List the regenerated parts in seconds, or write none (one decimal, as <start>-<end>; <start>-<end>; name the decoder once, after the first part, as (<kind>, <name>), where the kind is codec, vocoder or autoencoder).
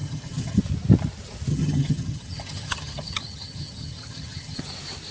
0.0-0.6 (vocoder, HiFi-GAN); 1.5-4.6